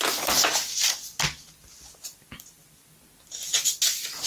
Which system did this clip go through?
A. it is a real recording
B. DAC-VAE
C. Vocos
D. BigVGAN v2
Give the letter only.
A